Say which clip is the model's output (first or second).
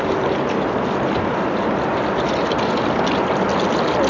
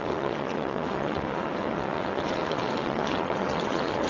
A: second